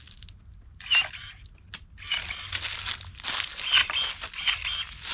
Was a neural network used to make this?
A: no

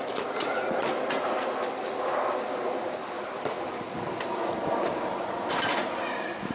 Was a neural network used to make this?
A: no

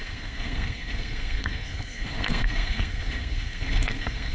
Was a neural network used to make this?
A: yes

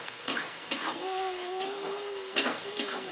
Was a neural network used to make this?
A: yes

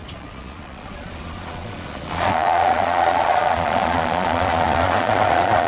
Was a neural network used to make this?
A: yes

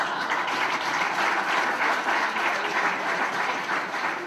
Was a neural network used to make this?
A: no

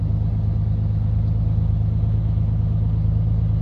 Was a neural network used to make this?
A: no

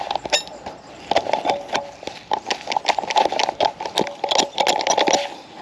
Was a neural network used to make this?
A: no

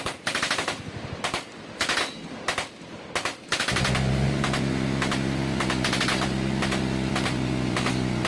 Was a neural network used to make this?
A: no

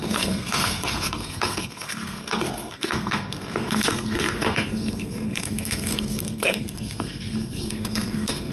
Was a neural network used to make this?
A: yes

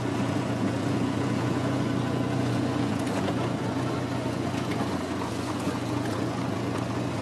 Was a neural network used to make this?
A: yes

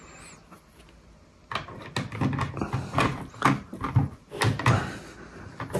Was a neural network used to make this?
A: no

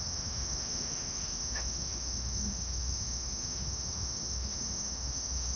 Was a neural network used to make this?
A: yes